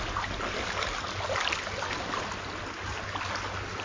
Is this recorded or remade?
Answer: recorded